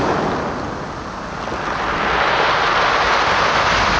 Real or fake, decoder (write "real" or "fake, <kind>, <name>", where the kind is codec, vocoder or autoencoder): real